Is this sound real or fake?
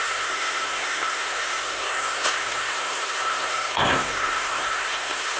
fake